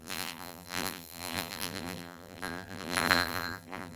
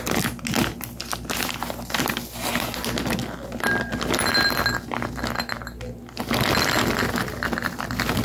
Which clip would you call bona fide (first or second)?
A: second